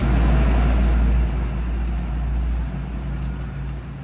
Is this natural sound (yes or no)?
yes